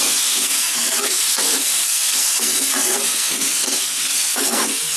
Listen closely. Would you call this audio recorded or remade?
remade